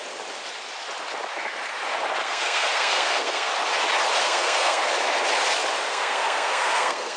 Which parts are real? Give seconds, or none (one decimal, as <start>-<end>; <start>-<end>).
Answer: 0.0-2.2; 3.5-4.2; 4.8-5.9